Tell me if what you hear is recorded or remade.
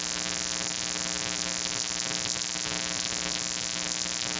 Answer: recorded